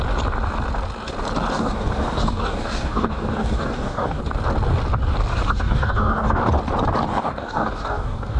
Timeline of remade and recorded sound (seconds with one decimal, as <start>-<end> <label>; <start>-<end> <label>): 0.0-1.5 recorded; 1.5-4.2 remade; 4.2-5.3 recorded; 5.3-6.5 remade; 6.5-7.1 recorded; 7.1-8.4 remade